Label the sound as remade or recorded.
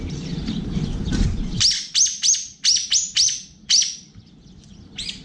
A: recorded